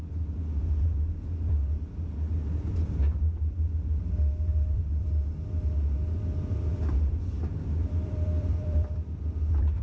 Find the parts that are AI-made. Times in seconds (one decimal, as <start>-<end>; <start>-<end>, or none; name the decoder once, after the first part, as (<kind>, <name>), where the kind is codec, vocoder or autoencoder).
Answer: 4.5-5.1 (vocoder, BigVGAN v2); 6.7-9.4